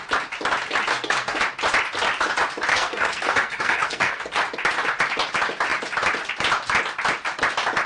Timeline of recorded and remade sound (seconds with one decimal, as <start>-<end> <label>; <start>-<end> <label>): 0.0-0.9 recorded; 0.9-1.4 remade; 1.4-2.7 recorded; 2.7-4.4 remade; 4.4-7.9 recorded